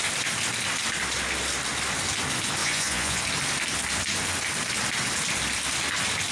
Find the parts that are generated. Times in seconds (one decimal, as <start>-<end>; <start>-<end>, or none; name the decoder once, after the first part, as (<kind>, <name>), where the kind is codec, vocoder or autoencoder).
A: 2.6-3.2 (vocoder, Vocos)